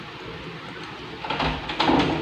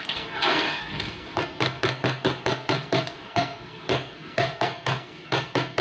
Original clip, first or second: first